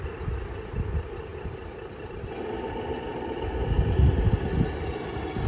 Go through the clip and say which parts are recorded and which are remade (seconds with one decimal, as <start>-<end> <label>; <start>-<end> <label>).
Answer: 0.0-1.3 recorded; 1.3-2.3 remade; 2.3-3.1 recorded; 3.1-4.3 remade; 4.3-5.5 recorded

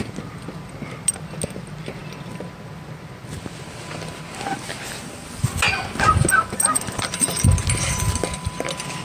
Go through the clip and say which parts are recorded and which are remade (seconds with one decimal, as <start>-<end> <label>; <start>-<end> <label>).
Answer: 0.0-9.0 recorded

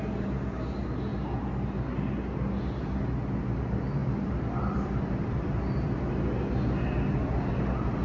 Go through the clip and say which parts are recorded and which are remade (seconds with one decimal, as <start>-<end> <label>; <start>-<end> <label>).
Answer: 0.0-4.0 recorded; 4.0-6.1 remade; 6.1-8.0 recorded

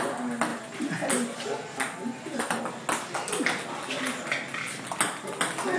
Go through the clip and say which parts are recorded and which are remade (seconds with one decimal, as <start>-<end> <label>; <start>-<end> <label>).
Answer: 0.0-5.8 recorded